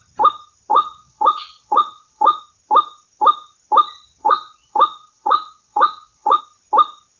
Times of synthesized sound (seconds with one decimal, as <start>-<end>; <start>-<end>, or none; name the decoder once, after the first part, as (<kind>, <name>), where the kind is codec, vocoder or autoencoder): 0.7-2.4 (vocoder, WaveNeXt); 4.2-6.4